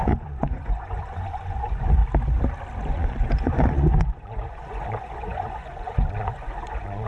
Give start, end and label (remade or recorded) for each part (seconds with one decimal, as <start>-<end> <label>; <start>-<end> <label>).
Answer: 0.0-2.0 remade; 2.0-2.9 recorded; 2.9-7.1 remade